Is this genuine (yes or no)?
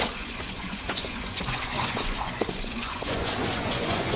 no